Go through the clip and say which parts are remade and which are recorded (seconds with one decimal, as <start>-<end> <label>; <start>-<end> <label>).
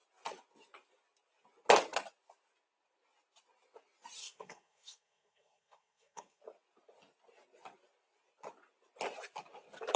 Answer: 0.0-4.2 recorded; 4.2-6.4 remade; 6.4-10.0 recorded